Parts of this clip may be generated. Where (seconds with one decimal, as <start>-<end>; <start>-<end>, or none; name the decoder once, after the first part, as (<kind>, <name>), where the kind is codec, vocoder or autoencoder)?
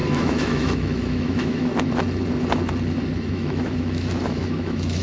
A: 0.0-1.7 (autoencoder, DAC-VAE); 3.3-5.0